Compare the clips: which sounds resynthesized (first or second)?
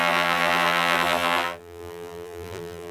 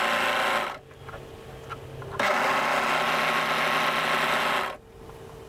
first